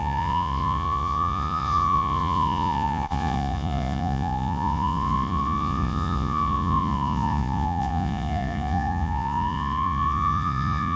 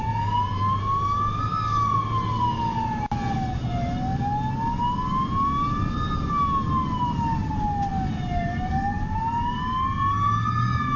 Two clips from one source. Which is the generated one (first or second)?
first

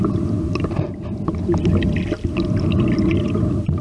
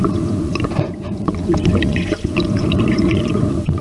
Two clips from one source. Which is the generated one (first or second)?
second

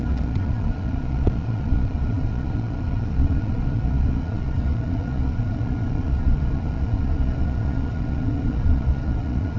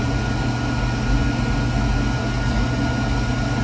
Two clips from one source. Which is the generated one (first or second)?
first